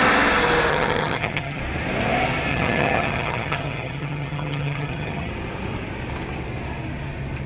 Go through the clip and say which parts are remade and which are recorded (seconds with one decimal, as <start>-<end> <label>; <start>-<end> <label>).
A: 0.0-0.7 recorded; 0.7-1.6 remade; 1.6-2.5 recorded; 2.5-5.3 remade; 5.3-7.5 recorded